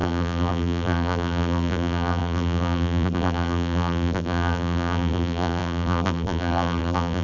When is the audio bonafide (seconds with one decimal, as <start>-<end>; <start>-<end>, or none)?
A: none